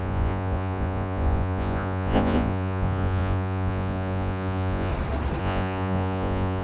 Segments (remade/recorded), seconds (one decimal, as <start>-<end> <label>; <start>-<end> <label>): 0.0-4.9 remade; 4.9-5.4 recorded; 5.4-6.6 remade

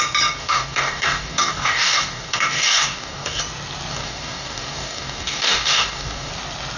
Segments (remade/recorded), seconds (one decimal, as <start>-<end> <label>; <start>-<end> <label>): 0.0-0.4 recorded; 0.4-3.4 remade; 3.4-3.9 recorded; 3.9-6.3 remade; 6.3-6.8 recorded

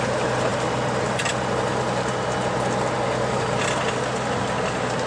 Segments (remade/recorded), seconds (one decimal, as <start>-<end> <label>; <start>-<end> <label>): 0.0-5.1 recorded

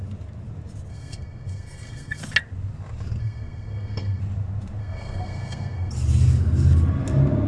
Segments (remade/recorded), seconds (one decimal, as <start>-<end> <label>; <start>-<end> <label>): 0.0-0.9 recorded; 0.9-2.2 remade; 2.2-3.2 recorded; 3.2-4.2 remade; 4.2-4.8 recorded; 4.8-5.9 remade; 5.9-7.5 recorded

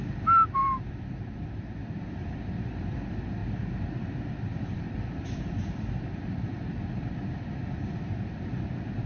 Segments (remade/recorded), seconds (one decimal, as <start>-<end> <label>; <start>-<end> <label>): 0.0-0.6 recorded; 0.6-2.7 remade; 2.7-4.5 recorded; 4.5-8.7 remade; 8.7-9.1 recorded

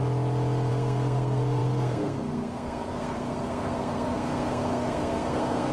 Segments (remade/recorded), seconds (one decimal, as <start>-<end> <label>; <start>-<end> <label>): 0.0-0.7 recorded; 0.7-5.7 remade